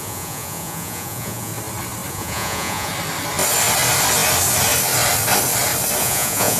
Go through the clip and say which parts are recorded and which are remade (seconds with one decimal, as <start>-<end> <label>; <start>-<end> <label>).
0.0-1.5 remade; 1.5-2.1 recorded; 2.1-2.9 remade; 2.9-6.0 recorded; 6.0-6.6 remade